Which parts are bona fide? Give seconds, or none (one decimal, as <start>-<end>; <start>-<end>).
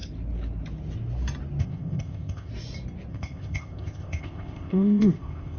0.0-1.6; 2.5-3.1